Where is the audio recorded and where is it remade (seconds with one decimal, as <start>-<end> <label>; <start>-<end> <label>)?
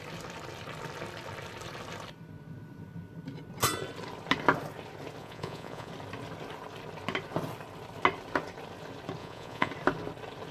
0.0-5.2 recorded; 5.2-5.9 remade; 5.9-9.2 recorded; 9.2-9.7 remade; 9.7-10.5 recorded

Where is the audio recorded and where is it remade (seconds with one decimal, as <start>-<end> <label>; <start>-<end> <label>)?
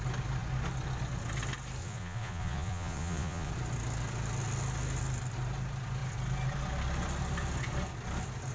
0.0-1.8 recorded; 1.8-3.5 remade; 3.5-8.5 recorded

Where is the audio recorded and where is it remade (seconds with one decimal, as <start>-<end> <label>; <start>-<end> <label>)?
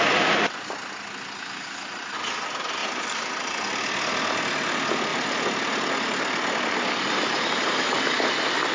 0.0-8.7 recorded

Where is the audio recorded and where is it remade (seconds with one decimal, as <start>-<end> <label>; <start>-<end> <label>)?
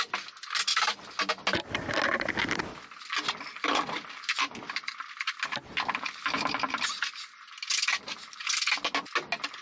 0.0-0.7 recorded; 0.7-1.3 remade; 1.3-9.6 recorded